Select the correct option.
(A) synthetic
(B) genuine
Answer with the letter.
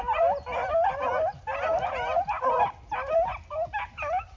B